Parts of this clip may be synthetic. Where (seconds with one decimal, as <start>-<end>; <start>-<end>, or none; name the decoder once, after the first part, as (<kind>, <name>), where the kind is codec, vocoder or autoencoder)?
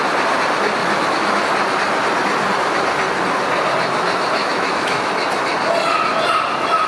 0.8-1.4 (autoencoder, DAC-VAE); 4.4-5.1